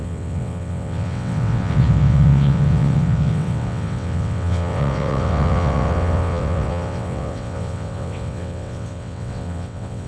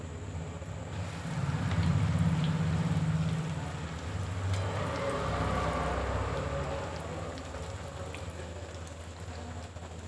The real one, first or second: second